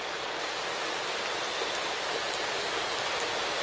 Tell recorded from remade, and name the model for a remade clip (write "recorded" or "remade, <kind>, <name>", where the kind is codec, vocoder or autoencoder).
recorded